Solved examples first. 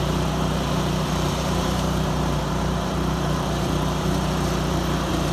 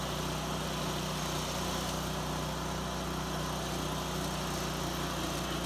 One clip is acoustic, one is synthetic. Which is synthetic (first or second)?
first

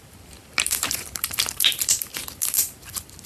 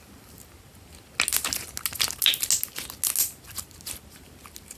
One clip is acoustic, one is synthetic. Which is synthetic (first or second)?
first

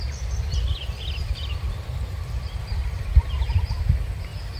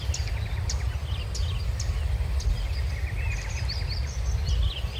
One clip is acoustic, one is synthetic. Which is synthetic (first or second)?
first